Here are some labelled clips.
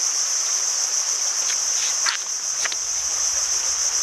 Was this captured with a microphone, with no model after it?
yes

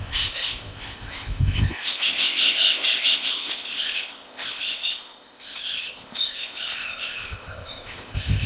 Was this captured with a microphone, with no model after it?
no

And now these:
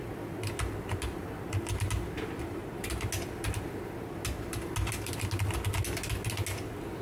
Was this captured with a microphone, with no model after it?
yes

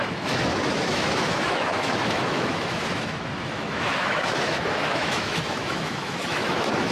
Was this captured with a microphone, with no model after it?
no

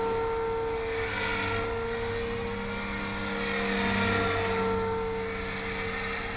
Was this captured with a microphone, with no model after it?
yes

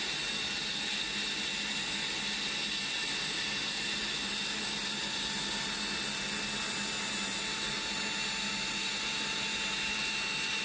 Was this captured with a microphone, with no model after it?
yes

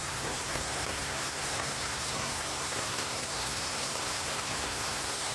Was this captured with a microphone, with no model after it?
no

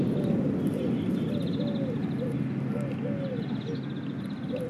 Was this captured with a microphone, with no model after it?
yes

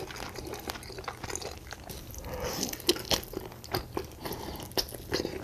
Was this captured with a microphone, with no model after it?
yes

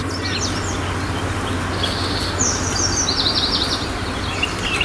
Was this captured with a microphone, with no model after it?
yes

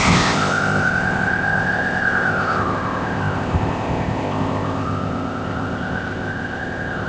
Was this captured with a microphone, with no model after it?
no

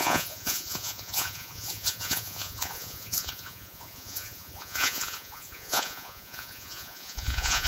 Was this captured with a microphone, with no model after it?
no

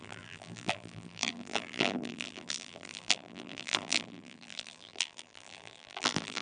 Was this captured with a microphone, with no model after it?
no